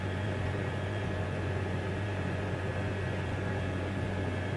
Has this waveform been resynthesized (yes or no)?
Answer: yes